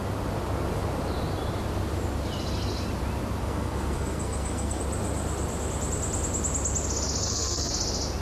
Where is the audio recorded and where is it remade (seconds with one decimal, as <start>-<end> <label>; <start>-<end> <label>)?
0.0-3.4 recorded; 3.4-4.8 remade; 4.8-7.2 recorded; 7.2-7.7 remade; 7.7-8.2 recorded